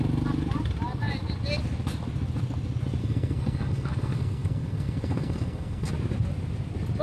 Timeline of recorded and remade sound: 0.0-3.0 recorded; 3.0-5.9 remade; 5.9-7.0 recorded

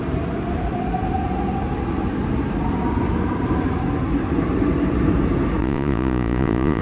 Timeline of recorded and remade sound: 0.0-5.6 recorded; 5.6-6.8 remade

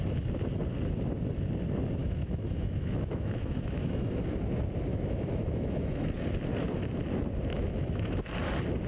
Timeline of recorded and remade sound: 0.0-2.0 recorded; 2.0-4.2 remade; 4.2-4.9 recorded; 4.9-6.1 remade; 6.1-7.5 recorded; 7.5-8.2 remade; 8.2-8.9 recorded

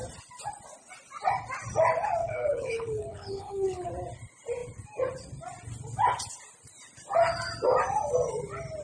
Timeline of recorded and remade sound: 0.0-2.2 recorded; 2.2-3.9 remade; 3.9-8.8 recorded

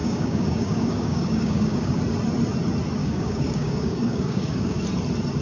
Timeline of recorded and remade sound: 0.0-2.0 remade; 2.0-3.0 recorded; 3.0-4.8 remade; 4.8-5.4 recorded

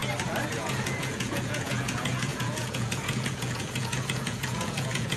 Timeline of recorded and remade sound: 0.0-0.5 recorded; 0.5-5.2 remade

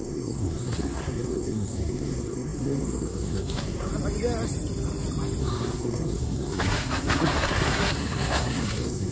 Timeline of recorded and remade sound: 0.0-3.9 remade; 3.9-5.4 recorded; 5.4-9.1 remade

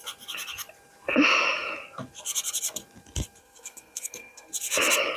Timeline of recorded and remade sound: 0.0-3.4 recorded; 3.4-4.5 remade; 4.5-5.2 recorded